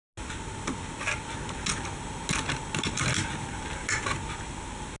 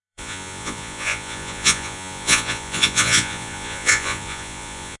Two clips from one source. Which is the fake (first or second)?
second